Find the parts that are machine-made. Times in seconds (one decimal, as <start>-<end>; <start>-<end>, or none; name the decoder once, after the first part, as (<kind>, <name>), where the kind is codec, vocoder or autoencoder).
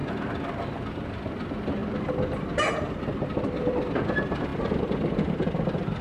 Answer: 0.7-1.8 (vocoder, BigVGAN v2); 3.7-6.0